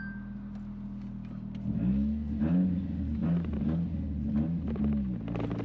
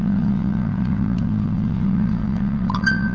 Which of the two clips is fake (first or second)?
second